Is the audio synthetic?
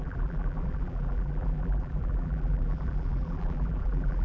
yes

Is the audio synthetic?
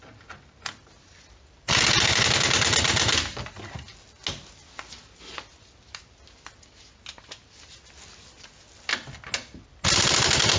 no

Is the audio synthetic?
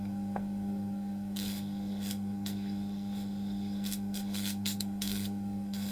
yes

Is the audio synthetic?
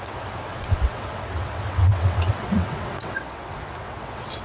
yes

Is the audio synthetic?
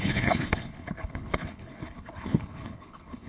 yes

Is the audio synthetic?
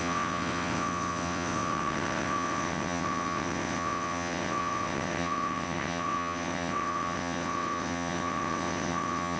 yes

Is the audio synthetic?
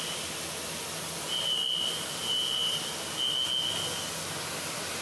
no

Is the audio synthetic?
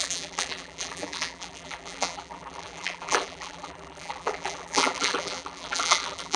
yes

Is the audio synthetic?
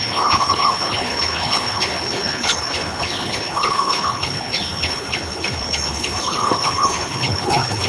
yes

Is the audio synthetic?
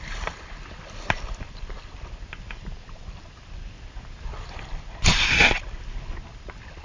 no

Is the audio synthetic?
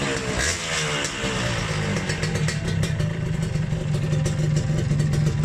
no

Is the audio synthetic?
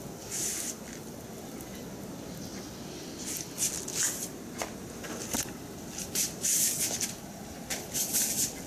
no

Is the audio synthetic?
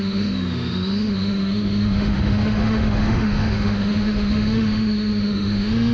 yes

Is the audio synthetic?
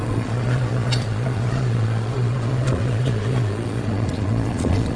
yes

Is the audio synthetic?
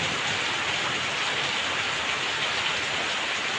no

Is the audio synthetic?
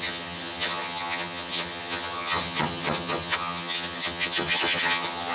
yes